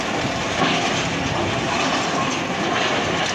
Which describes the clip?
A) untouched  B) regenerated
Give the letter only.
A